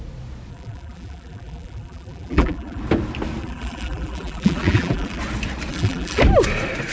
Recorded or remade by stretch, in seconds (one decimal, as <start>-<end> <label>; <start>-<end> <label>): 0.0-0.5 recorded; 0.5-2.8 remade; 2.8-3.4 recorded; 3.4-5.2 remade; 5.2-5.7 recorded; 5.7-6.2 remade; 6.2-6.9 recorded